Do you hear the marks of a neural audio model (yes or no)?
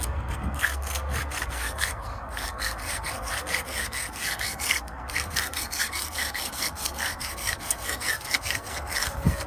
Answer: yes